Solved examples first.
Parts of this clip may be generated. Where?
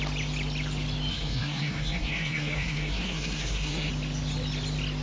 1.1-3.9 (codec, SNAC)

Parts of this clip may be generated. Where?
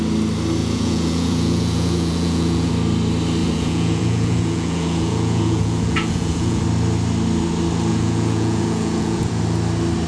0.6-2.7 (vocoder, Vocos); 3.4-6.6; 7.9-9.4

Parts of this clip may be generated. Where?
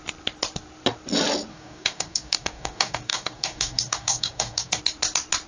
1.5-4.8 (codec, DAC)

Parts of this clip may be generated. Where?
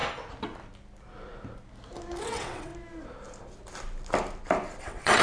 2.2-2.7 (vocoder, WaveNeXt); 4.8-5.2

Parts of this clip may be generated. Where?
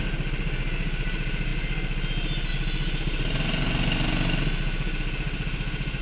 none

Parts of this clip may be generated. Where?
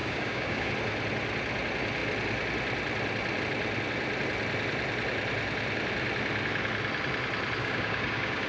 0.0-0.7 (codec, DAC); 7.6-8.5